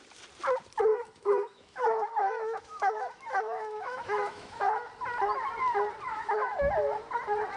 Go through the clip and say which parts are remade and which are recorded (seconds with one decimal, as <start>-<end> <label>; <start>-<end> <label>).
0.0-0.9 recorded; 0.9-4.7 remade; 4.7-6.1 recorded; 6.1-6.7 remade; 6.7-7.6 recorded